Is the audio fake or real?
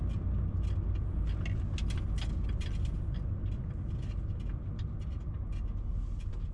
real